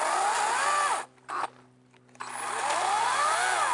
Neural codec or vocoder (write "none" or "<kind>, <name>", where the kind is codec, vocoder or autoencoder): none